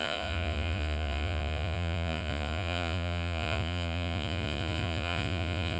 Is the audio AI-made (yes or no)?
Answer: yes